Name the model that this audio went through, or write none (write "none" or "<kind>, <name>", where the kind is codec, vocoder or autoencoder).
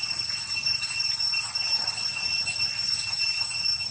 none